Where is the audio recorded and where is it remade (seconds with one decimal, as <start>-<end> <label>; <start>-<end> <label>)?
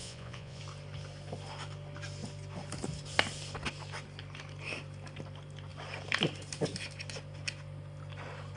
0.0-0.6 remade; 0.6-8.6 recorded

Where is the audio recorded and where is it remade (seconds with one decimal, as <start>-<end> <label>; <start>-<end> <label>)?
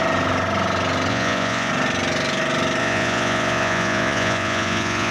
0.0-1.1 recorded; 1.1-1.7 remade; 1.7-2.8 recorded; 2.8-5.1 remade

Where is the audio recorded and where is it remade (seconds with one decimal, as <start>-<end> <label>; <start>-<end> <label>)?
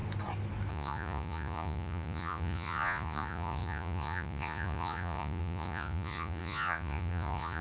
0.0-0.7 recorded; 0.7-7.6 remade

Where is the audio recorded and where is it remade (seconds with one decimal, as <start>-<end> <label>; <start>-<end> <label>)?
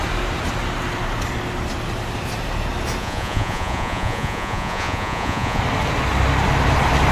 0.0-3.0 recorded; 3.0-5.6 remade; 5.6-7.1 recorded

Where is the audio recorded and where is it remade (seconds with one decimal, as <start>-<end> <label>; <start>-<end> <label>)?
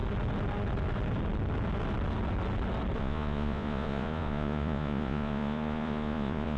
0.0-3.0 recorded; 3.0-6.6 remade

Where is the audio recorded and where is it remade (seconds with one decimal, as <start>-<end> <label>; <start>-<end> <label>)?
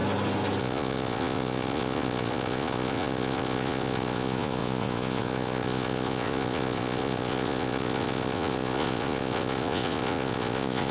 0.0-0.6 recorded; 0.6-10.9 remade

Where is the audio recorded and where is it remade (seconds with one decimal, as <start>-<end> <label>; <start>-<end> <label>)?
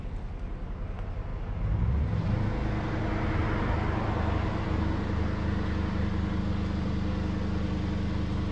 0.0-8.5 recorded